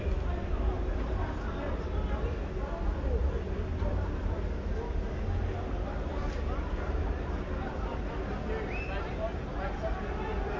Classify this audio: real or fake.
real